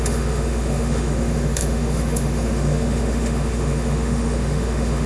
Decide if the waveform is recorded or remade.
remade